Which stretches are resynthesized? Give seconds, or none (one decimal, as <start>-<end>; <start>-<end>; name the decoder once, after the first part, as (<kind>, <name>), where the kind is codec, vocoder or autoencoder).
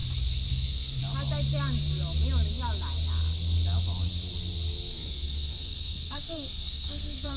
0.5-1.0 (codec, SNAC); 4.9-7.4